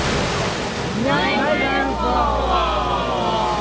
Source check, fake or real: real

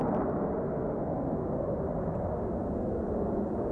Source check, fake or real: real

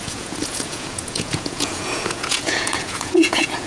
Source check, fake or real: fake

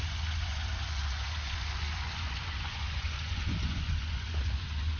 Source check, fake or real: fake